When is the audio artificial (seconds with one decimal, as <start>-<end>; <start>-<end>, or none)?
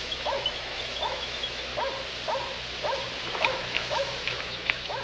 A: 0.0-1.7; 3.3-5.0